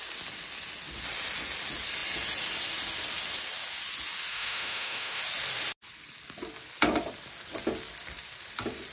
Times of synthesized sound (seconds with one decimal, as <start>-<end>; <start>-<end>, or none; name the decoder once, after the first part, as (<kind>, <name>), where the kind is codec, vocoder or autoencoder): 4.3-5.2 (autoencoder, DAC-VAE)